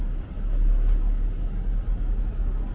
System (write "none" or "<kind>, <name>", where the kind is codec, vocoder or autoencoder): none